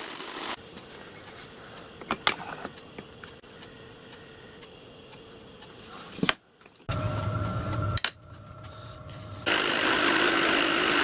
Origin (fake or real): real